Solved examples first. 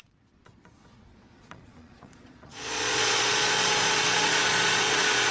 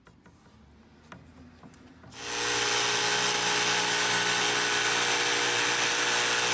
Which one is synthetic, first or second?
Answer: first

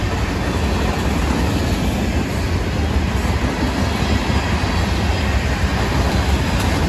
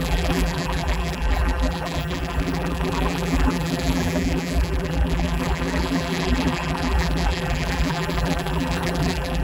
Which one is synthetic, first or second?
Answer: second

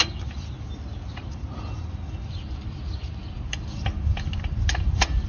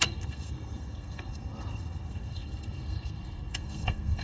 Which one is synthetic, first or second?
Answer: second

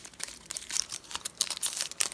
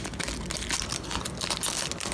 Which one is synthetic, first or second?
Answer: first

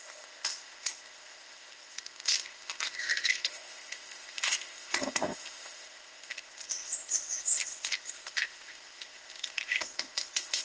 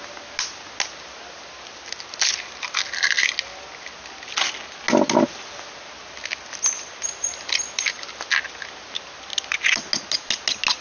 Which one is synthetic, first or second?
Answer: first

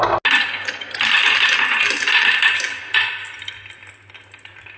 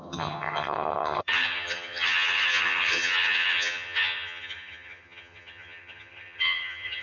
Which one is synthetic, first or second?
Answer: second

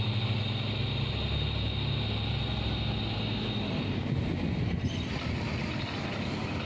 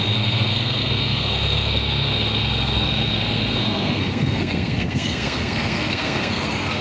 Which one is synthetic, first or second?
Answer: second